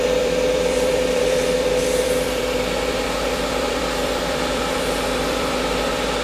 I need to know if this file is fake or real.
fake